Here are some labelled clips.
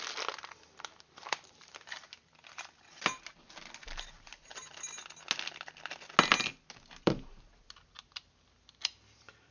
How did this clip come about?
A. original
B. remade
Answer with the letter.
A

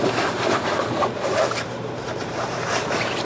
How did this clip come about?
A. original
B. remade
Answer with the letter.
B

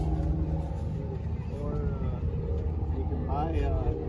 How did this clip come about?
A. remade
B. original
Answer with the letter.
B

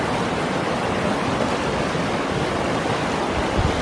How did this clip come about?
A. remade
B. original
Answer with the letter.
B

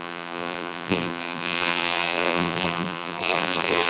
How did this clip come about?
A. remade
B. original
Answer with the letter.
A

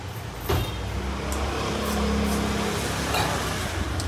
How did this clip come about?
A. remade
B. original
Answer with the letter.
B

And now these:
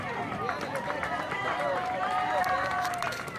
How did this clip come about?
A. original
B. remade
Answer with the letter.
B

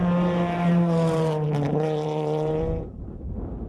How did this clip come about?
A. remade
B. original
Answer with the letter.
A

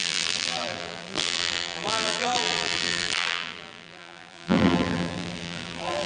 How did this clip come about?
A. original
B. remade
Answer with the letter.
B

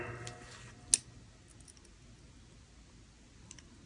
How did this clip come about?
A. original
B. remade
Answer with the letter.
A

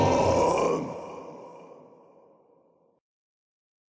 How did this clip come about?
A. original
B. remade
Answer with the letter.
A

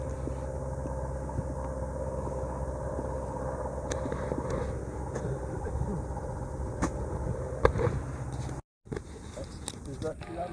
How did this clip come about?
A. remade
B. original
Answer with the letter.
A